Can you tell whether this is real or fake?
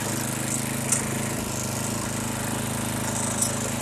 real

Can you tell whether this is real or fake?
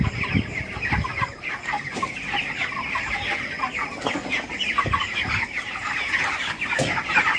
real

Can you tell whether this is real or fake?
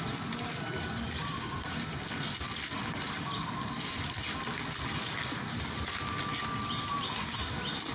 real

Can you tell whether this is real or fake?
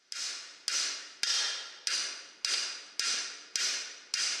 real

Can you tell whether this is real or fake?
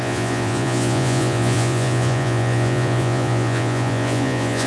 fake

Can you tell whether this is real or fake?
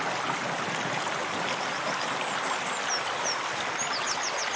real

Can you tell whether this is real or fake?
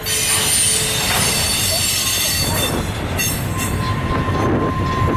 real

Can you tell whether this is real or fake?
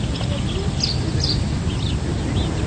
real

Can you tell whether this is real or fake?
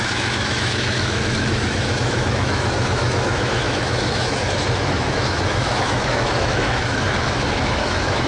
fake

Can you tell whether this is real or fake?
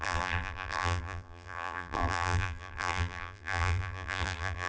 fake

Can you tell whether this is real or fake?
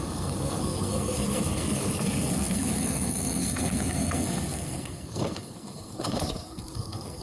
fake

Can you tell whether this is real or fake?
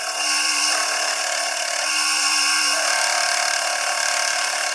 fake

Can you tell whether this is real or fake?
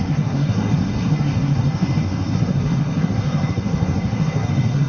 fake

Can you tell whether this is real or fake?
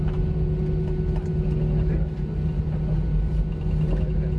real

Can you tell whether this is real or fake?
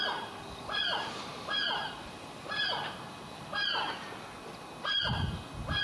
real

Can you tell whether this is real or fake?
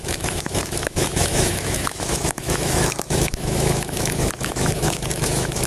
fake